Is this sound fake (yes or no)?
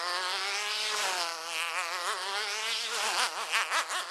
no